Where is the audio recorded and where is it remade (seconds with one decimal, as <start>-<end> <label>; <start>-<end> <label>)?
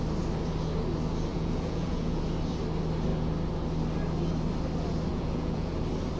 0.0-1.3 recorded; 1.3-2.2 remade; 2.2-5.1 recorded; 5.1-5.7 remade; 5.7-6.2 recorded